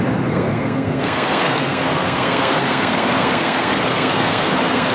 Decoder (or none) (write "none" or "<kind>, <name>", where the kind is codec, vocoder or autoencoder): codec, SNAC